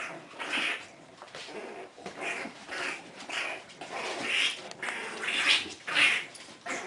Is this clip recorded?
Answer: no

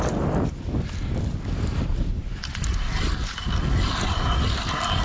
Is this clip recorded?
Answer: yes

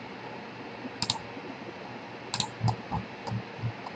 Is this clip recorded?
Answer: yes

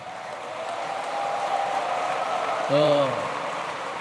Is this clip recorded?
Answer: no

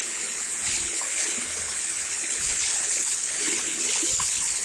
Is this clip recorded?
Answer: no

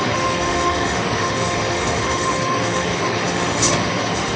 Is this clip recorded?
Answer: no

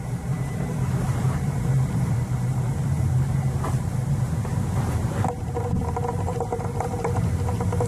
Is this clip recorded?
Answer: no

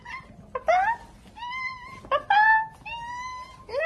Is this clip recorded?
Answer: yes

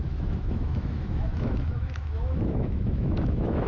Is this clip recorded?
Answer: no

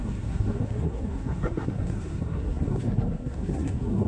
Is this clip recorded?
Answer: no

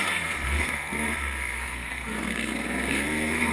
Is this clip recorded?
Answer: no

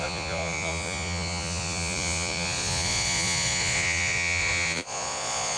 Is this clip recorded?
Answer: no